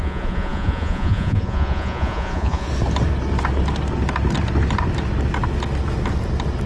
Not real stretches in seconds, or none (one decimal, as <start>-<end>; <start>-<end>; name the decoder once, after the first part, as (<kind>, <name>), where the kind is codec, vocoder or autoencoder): 0.0-2.7 (vocoder, Vocos)